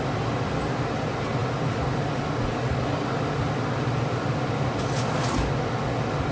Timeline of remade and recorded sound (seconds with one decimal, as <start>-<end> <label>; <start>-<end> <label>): 0.0-6.3 recorded